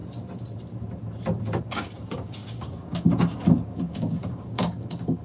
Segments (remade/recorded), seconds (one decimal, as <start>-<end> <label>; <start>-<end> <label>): 0.0-1.6 recorded; 1.6-5.2 remade